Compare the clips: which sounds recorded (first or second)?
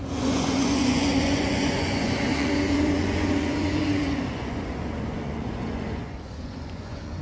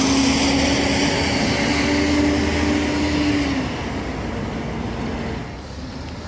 second